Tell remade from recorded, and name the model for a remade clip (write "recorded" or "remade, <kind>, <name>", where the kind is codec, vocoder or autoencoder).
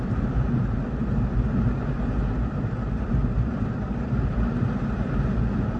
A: remade, vocoder, BigVGAN v2